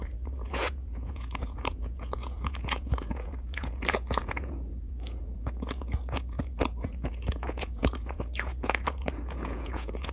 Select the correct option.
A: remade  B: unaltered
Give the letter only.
A